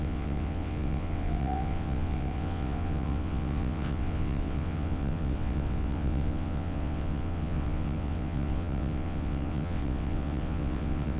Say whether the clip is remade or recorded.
remade